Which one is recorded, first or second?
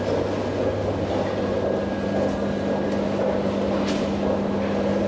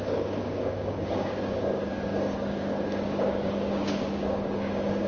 first